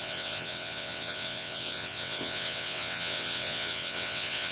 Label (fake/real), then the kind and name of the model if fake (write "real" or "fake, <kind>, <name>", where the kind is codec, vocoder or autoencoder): fake, vocoder, WaveNeXt